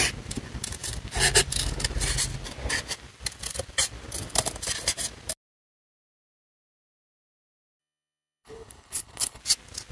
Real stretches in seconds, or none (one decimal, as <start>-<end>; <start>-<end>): 0.0-7.8; 9.4-9.9

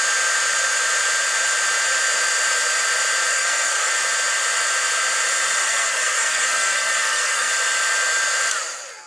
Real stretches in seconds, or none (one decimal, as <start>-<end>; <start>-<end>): 0.0-3.3; 3.9-5.6; 7.5-9.1